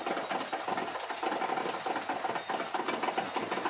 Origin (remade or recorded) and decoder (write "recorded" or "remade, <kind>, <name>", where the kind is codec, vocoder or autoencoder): recorded